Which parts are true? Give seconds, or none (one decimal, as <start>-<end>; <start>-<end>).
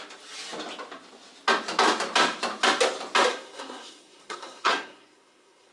0.0-3.3